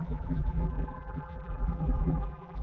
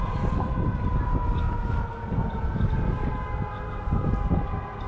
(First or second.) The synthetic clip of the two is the first